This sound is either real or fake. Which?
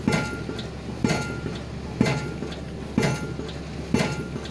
real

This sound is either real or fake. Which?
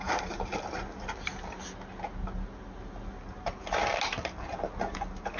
real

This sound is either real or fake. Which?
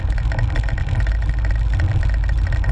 real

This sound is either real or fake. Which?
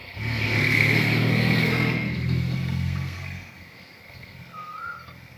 fake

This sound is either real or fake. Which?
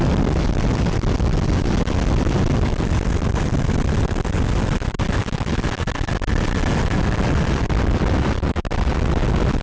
real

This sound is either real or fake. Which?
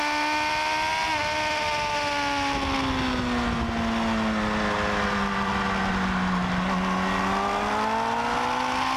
real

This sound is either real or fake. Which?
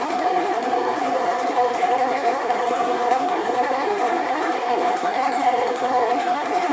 fake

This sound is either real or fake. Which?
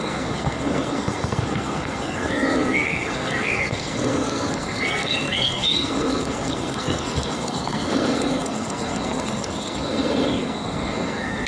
fake